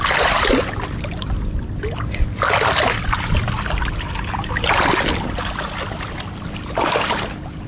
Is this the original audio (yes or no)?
yes